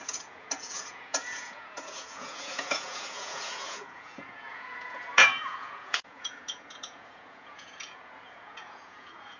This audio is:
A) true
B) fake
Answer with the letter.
B